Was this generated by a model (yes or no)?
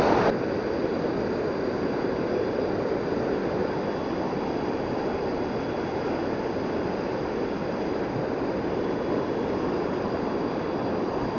no